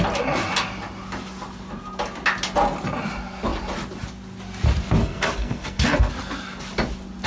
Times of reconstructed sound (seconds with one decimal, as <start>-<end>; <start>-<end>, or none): 5.0-6.1